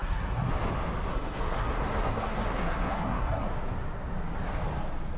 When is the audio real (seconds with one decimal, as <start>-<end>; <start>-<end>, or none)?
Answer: 0.5-1.1; 3.5-5.2